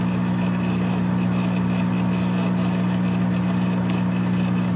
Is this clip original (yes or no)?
yes